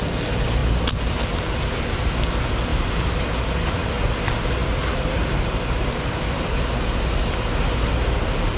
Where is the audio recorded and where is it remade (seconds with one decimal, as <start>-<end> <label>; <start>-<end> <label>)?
0.0-8.6 recorded